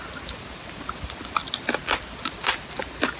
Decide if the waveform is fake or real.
real